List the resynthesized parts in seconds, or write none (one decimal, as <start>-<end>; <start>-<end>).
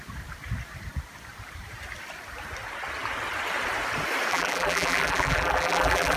4.3-6.2